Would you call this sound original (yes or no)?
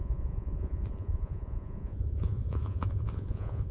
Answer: no